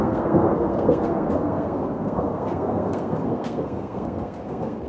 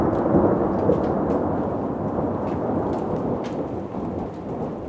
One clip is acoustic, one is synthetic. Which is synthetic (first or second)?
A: first